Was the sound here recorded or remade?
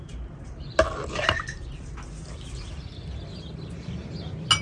recorded